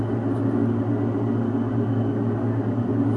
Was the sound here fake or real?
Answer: real